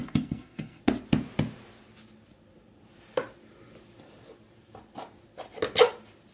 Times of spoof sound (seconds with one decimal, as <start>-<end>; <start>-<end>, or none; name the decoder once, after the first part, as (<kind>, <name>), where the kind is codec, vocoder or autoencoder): 0.0-0.8 (codec, SNAC)